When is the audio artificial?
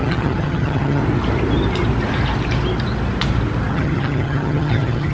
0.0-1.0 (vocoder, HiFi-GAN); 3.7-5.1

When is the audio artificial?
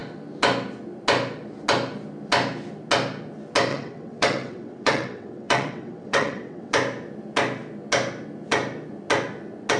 3.7-6.7 (vocoder, WaveNeXt)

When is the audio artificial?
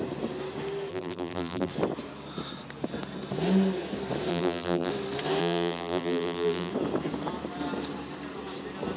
0.9-1.7 (vocoder, BigVGAN v2); 4.3-4.9; 5.4-6.7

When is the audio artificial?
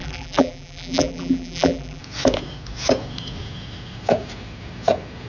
0.0-2.0 (vocoder, BigVGAN v2)